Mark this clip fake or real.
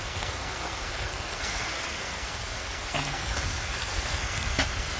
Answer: fake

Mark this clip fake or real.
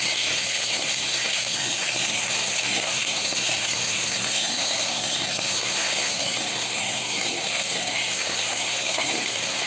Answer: fake